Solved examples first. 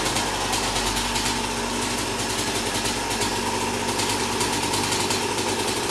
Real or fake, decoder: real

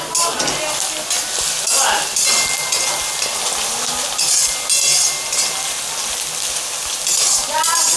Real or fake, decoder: real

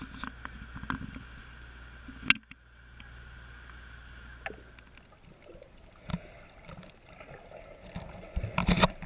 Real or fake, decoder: real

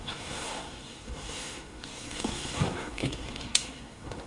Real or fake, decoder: fake, codec, SNAC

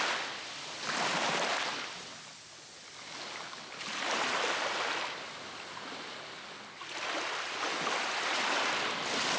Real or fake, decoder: real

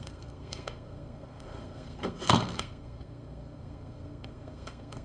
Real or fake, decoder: fake, codec, SNAC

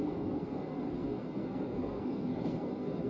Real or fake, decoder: fake, codec, SNAC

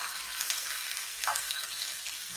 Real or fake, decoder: fake, codec, SNAC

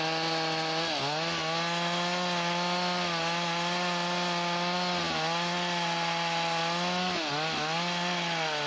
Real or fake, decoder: real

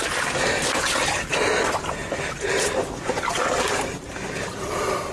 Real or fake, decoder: real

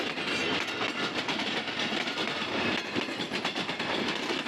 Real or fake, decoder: real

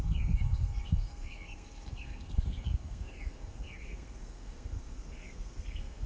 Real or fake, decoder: fake, codec, SNAC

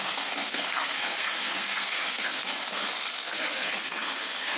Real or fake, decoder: fake, codec, SNAC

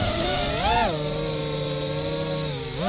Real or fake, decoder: real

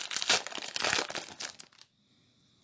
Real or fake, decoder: real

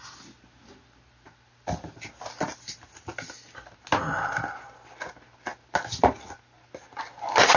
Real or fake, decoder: real